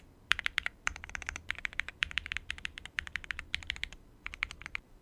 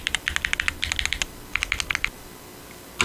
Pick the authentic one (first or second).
second